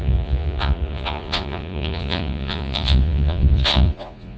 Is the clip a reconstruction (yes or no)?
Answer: yes